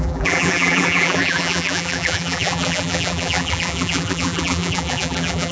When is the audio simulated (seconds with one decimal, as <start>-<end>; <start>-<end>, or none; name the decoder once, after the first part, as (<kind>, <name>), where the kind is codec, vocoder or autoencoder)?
0.0-5.5 (vocoder, BigVGAN v2)